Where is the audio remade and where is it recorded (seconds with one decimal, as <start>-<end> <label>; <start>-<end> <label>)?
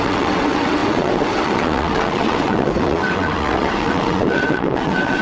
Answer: 0.0-5.2 remade